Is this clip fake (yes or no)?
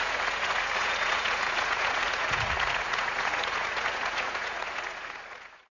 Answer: yes